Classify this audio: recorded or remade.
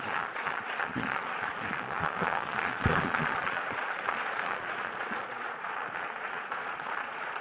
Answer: remade